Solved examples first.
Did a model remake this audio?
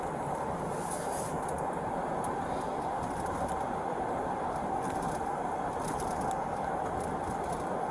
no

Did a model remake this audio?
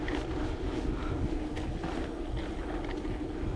no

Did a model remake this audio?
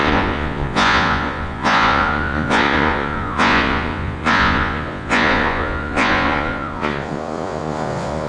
yes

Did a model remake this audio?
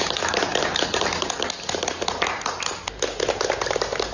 no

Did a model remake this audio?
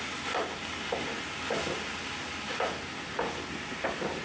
no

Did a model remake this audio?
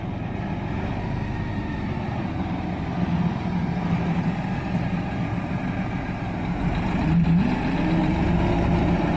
no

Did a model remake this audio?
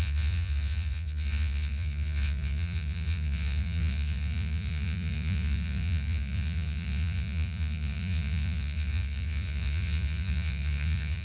yes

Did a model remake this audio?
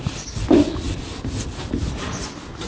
no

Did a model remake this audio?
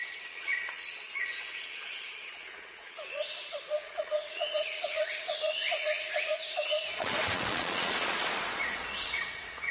yes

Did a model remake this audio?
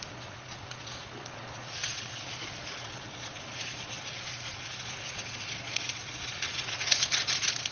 yes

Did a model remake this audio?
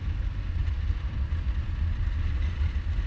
no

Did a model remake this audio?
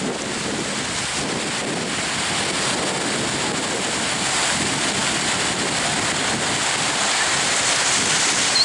no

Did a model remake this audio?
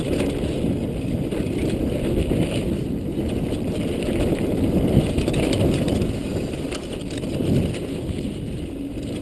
no